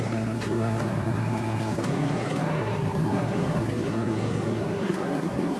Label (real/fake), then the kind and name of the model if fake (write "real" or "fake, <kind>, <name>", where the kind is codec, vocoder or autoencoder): fake, codec, SNAC